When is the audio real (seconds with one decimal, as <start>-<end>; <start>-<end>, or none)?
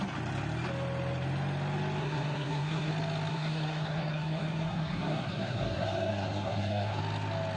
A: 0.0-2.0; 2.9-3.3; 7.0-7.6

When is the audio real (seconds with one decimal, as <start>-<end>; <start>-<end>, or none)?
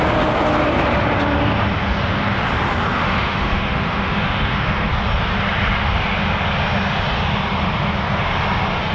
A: 0.0-3.0; 4.9-8.9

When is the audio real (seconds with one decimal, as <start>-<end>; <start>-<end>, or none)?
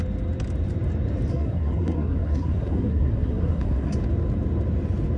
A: 0.0-1.3; 3.9-5.2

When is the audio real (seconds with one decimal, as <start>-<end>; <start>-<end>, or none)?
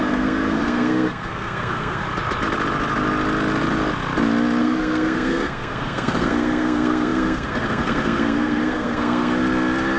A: 2.0-4.6; 9.4-10.0